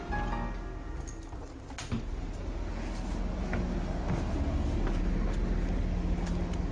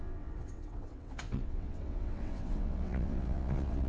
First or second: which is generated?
second